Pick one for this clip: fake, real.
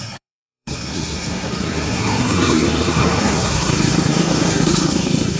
fake